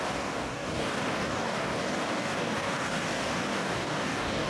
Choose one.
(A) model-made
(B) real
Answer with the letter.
A